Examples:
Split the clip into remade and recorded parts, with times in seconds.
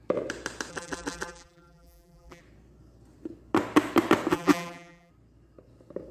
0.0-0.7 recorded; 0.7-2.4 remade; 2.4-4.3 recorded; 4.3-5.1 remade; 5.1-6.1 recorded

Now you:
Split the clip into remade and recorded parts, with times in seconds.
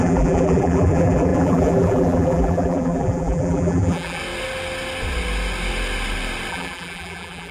0.0-4.2 remade; 4.2-6.5 recorded; 6.5-7.5 remade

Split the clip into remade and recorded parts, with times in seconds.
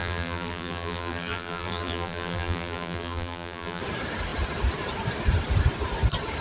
0.0-3.8 remade; 3.8-6.4 recorded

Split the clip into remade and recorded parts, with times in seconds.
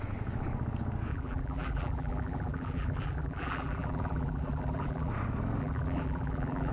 0.0-1.1 recorded; 1.1-5.1 remade; 5.1-5.6 recorded; 5.6-6.7 remade